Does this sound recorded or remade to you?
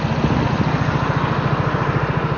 recorded